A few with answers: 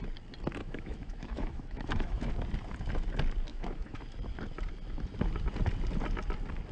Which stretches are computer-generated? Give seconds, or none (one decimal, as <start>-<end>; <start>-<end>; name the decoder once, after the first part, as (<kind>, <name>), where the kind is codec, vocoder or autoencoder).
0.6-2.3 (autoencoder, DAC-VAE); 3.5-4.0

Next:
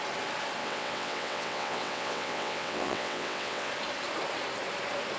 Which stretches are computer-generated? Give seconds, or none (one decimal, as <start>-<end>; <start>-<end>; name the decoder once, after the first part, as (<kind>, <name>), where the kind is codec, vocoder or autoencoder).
0.6-3.7 (vocoder, WaveNeXt)

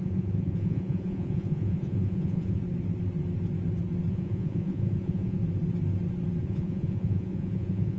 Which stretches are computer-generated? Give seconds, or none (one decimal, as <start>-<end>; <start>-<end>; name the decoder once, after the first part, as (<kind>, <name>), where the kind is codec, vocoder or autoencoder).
0.0-2.6 (vocoder, Vocos); 4.1-5.4; 6.4-8.0